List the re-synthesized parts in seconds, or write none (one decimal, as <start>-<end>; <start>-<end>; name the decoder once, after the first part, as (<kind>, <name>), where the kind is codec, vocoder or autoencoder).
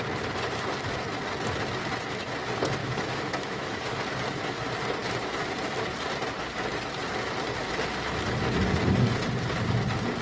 2.8-3.8 (autoencoder, DAC-VAE)